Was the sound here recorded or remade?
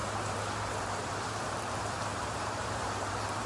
remade